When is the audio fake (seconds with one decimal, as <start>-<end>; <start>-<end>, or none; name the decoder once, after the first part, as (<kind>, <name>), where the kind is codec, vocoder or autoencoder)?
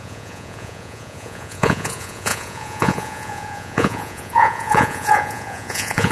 0.0-6.1 (vocoder, Vocos)